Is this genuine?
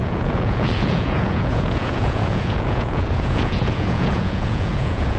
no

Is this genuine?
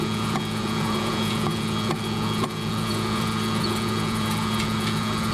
no